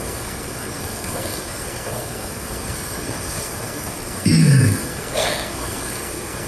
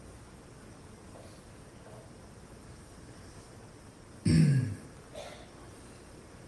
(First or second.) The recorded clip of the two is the second